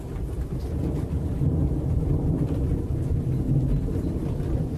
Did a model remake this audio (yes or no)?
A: no